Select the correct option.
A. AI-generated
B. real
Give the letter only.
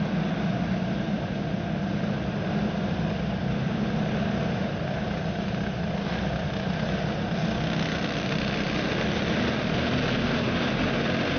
B